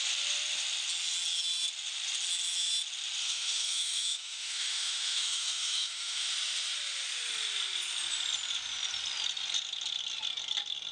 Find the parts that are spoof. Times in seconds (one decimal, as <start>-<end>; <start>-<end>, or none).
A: 3.2-6.3